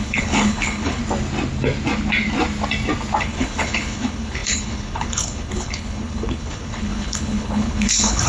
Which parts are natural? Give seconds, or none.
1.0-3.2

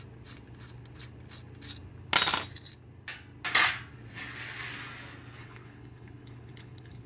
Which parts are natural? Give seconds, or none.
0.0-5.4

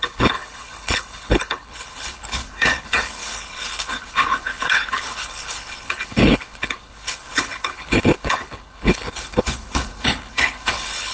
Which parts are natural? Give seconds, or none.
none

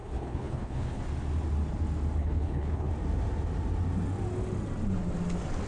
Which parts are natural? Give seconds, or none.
1.0-2.2; 2.9-5.7

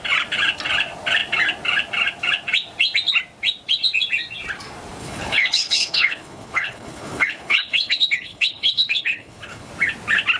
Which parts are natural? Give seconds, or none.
0.0-5.0; 9.7-10.4

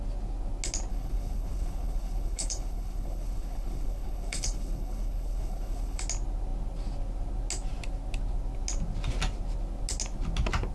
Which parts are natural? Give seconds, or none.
0.0-0.9; 6.0-10.7